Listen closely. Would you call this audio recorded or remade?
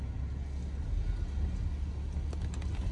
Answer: recorded